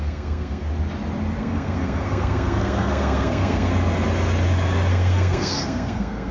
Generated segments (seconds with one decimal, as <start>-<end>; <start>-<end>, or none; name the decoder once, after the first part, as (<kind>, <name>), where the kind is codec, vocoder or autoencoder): 0.0-0.7 (codec, SNAC); 1.4-3.7; 4.9-6.3

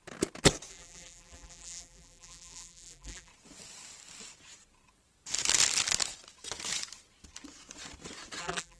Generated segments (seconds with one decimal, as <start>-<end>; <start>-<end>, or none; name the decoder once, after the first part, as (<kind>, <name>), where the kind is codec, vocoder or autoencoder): 0.7-3.3 (vocoder, BigVGAN v2); 8.4-8.8

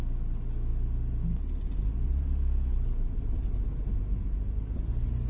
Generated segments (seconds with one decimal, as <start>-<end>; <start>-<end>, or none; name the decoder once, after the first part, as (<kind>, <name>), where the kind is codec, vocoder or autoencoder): none

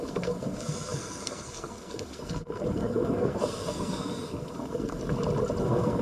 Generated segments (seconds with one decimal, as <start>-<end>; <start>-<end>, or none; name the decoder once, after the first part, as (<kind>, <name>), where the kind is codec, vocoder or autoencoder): 0.0-5.0 (codec, SNAC); 5.6-6.0